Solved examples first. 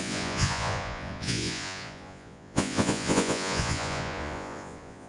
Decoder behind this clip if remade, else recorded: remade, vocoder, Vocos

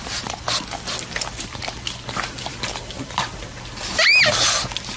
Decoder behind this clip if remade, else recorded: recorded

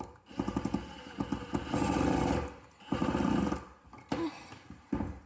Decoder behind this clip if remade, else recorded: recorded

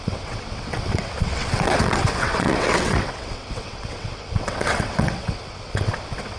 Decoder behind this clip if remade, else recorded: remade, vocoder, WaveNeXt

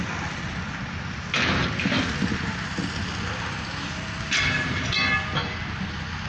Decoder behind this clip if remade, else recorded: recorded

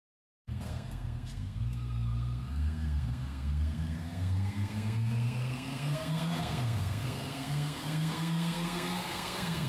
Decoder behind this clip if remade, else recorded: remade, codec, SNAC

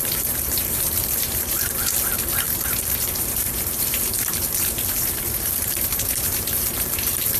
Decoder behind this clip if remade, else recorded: remade, vocoder, BigVGAN v2